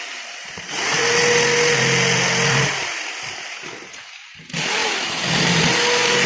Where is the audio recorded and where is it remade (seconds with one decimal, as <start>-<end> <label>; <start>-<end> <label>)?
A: 0.0-1.0 remade; 1.0-2.5 recorded; 2.5-6.3 remade